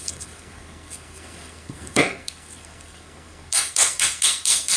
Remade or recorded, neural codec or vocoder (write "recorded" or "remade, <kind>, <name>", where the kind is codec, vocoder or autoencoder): remade, codec, SNAC